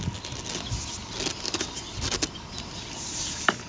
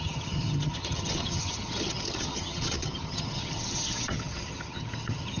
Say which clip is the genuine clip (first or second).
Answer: first